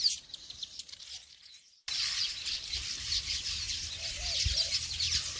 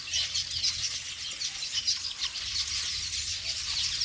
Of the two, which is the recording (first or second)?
second